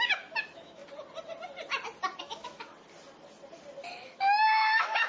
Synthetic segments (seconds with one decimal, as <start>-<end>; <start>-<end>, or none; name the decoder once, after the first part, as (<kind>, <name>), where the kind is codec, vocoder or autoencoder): 0.0-0.8 (autoencoder, DAC-VAE); 2.2-2.7; 3.9-5.1